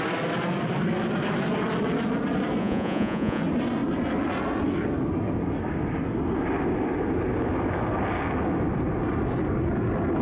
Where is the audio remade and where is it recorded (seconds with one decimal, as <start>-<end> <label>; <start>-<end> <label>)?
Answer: 0.0-2.6 recorded; 2.6-3.4 remade; 3.4-10.2 recorded